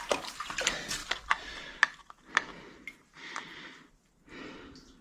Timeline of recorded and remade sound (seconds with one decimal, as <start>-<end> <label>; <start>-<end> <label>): 0.0-5.0 recorded